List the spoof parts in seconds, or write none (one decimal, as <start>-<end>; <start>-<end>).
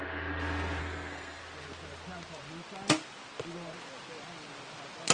0.8-1.4